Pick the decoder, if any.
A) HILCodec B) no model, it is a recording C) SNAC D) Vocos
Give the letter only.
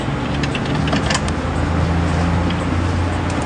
B